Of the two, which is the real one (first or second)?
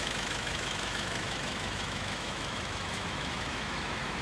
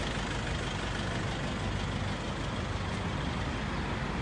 second